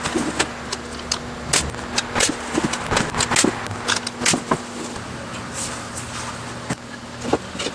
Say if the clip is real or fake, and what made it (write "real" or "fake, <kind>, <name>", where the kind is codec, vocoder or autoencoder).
real